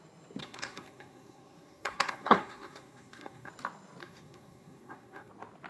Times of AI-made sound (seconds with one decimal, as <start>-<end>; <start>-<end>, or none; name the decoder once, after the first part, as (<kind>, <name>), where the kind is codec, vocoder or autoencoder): 0.4-3.5 (codec, SNAC); 4.0-5.3